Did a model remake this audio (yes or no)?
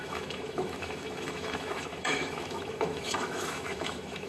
yes